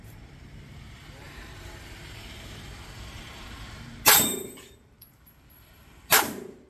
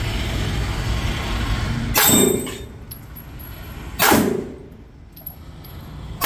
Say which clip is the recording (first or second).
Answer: second